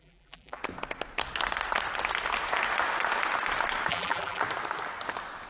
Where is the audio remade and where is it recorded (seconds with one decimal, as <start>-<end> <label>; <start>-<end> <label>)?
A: 0.0-0.6 remade; 0.6-3.9 recorded; 3.9-4.4 remade; 4.4-5.5 recorded